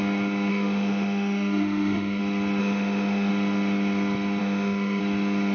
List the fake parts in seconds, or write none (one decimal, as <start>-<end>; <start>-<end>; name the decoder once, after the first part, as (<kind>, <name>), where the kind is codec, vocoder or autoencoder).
0.5-2.2 (autoencoder, DAC-VAE); 2.6-3.3; 4.4-5.0